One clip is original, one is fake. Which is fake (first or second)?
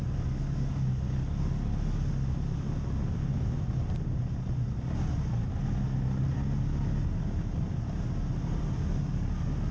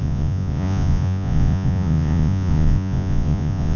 second